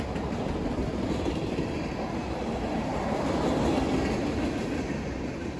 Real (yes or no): yes